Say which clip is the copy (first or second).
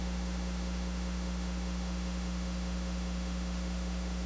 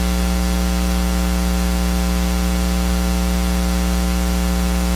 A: first